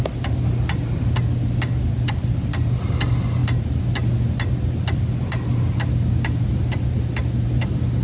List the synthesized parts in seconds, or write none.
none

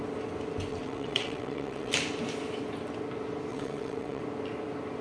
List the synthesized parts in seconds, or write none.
0.7-1.9 (vocoder, WaveNeXt); 3.5-4.2